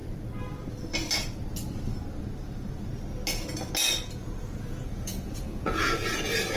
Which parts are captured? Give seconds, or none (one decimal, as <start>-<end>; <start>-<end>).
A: 0.0-4.2